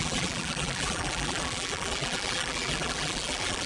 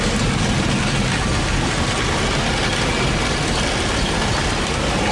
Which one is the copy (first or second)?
first